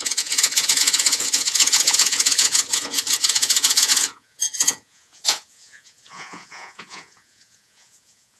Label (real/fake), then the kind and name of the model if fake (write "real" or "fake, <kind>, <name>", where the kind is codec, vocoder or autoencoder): fake, vocoder, Vocos